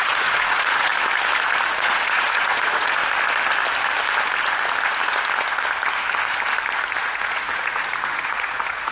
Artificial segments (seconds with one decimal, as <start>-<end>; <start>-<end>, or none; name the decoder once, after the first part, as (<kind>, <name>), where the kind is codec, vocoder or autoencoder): 0.0-0.9 (vocoder, Vocos); 1.6-3.0; 7.0-8.9